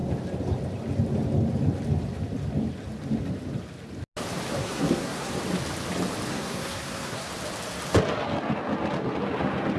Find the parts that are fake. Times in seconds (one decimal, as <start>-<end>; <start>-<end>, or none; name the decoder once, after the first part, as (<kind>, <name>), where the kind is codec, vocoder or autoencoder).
4.6-5.3 (codec, SNAC); 6.3-7.3